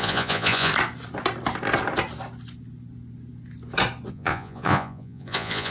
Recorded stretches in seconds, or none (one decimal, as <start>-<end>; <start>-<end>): 0.7-4.1